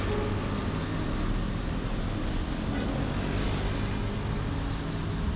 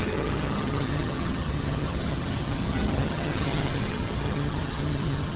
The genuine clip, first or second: first